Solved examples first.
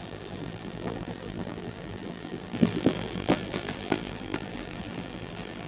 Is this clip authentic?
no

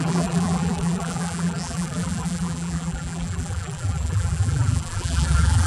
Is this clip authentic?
no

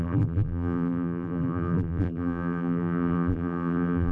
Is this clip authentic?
no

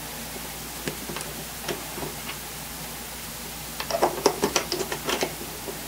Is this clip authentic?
yes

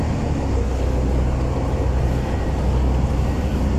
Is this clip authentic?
yes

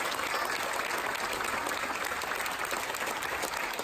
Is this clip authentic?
yes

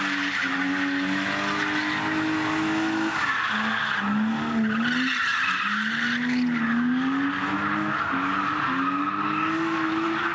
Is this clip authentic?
yes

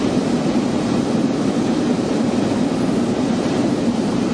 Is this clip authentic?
no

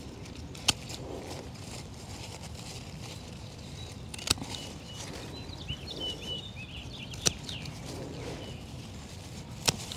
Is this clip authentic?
no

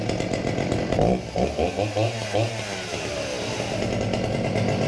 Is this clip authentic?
yes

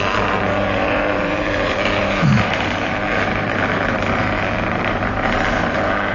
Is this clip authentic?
no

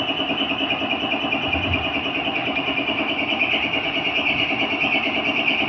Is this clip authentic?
yes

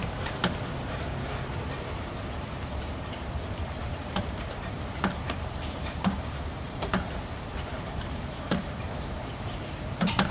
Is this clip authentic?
no